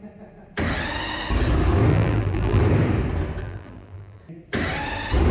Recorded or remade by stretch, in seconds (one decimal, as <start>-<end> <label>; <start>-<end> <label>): 0.0-1.9 recorded; 1.9-2.6 remade; 2.6-3.4 recorded; 3.4-4.2 remade; 4.2-5.3 recorded